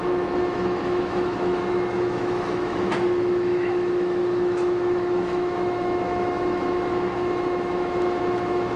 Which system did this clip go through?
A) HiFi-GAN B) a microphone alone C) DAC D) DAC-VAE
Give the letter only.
D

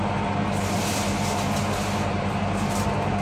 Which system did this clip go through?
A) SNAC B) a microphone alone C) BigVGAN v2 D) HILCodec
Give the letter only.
B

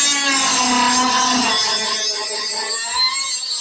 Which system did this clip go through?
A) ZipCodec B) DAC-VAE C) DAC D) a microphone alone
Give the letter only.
D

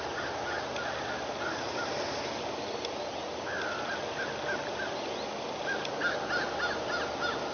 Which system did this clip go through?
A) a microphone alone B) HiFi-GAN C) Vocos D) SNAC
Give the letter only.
A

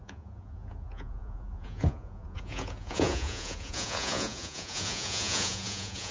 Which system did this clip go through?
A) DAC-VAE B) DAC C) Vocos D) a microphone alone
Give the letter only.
C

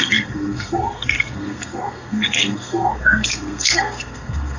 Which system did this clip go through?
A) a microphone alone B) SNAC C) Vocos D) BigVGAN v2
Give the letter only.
B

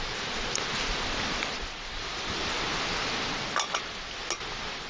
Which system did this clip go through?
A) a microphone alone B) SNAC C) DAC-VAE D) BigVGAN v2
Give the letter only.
A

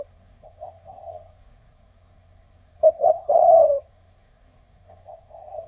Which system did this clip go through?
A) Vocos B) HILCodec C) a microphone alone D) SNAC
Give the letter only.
D